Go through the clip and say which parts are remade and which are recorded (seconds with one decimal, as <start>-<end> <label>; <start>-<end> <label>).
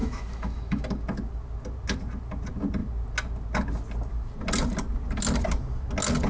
0.0-0.8 remade; 0.8-6.3 recorded